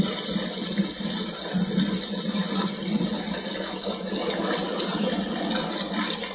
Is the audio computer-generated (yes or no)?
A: no